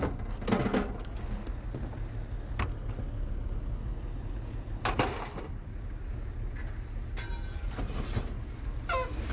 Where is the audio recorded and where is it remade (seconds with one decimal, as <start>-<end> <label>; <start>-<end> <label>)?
0.0-9.3 recorded